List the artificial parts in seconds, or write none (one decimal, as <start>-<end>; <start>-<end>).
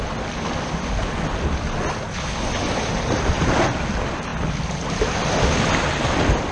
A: none